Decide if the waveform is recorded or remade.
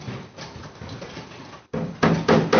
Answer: remade